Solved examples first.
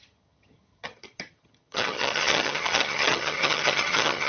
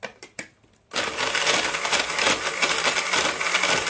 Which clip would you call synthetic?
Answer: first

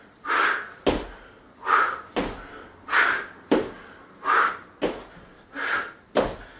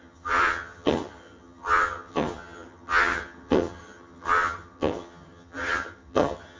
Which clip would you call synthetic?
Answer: second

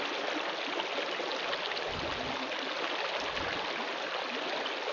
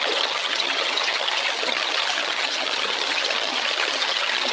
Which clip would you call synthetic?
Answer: second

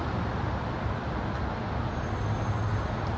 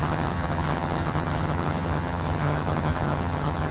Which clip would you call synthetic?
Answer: second